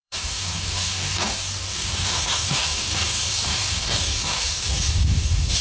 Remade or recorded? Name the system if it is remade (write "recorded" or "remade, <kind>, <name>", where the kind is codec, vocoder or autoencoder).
remade, codec, DAC